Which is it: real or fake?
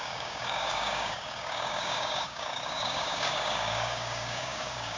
fake